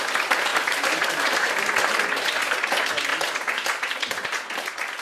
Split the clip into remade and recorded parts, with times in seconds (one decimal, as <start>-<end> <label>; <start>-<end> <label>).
0.0-0.5 recorded; 0.5-1.6 remade; 1.6-5.0 recorded